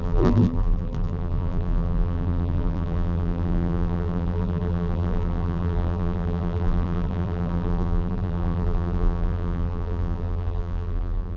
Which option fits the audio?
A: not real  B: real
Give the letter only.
A